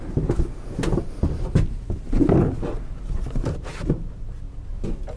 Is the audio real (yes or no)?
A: yes